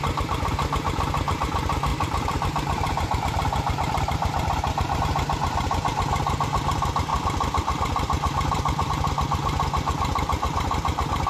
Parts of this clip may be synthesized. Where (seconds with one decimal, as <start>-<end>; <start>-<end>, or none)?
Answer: 1.9-5.0; 7.1-8.9